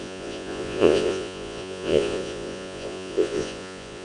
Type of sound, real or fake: fake